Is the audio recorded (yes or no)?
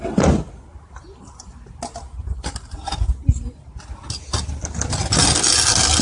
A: yes